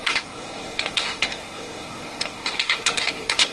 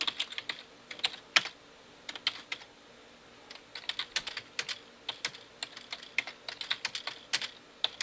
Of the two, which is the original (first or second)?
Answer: second